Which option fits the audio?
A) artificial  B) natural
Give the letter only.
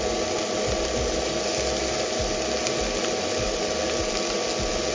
B